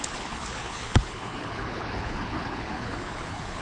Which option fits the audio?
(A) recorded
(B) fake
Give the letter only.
B